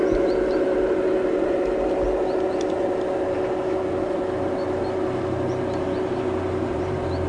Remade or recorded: recorded